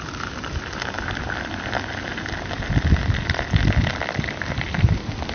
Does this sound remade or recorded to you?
recorded